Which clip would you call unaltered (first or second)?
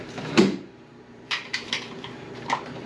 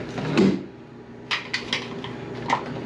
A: second